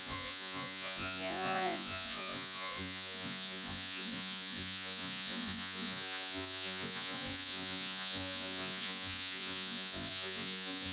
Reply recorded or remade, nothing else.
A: remade